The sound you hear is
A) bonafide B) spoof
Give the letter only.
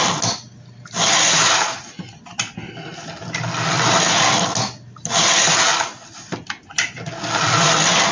A